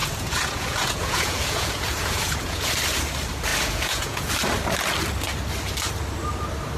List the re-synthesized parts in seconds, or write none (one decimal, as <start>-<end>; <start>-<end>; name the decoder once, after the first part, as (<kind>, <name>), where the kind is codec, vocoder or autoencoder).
0.0-2.7 (vocoder, Vocos); 3.5-4.3